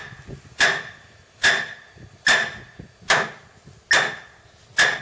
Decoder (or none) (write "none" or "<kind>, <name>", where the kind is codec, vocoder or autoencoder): none